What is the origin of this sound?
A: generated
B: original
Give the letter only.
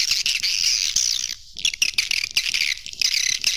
B